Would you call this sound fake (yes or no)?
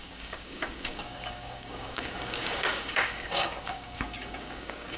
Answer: yes